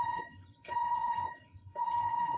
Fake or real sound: fake